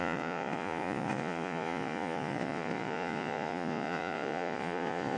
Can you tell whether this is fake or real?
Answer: fake